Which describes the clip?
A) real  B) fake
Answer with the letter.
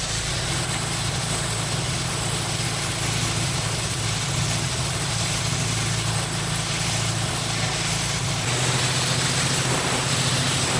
A